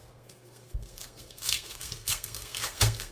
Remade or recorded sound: remade